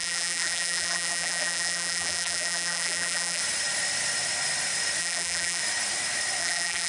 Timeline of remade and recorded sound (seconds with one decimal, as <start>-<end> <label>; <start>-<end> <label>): 0.0-3.4 remade; 3.4-5.0 recorded; 5.0-5.6 remade; 5.6-6.4 recorded; 6.4-6.9 remade